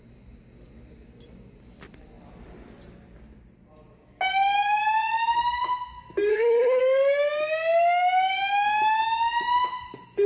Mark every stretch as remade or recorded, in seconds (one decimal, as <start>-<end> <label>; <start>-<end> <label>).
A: 0.0-6.3 recorded; 6.3-6.8 remade; 6.8-10.3 recorded